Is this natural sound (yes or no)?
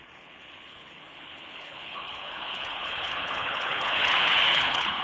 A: no